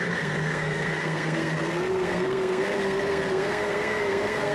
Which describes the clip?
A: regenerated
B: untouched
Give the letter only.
A